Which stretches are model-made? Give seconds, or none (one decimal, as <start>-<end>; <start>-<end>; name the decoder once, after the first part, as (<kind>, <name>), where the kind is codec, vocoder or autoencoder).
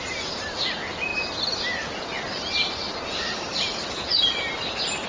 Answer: none